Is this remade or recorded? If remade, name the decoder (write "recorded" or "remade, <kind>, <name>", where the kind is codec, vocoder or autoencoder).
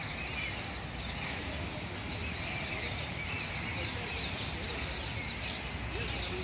recorded